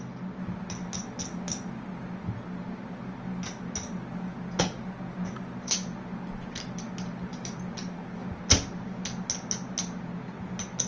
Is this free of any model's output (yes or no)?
yes